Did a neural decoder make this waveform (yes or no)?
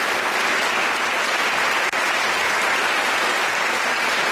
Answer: no